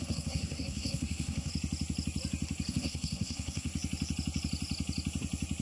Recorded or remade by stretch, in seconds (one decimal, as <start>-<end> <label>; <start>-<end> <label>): 0.0-1.5 remade; 1.5-2.7 recorded; 2.7-3.7 remade; 3.7-5.6 recorded